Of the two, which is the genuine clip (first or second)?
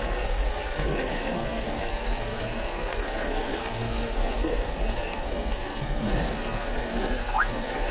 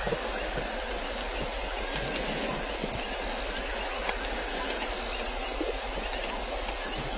second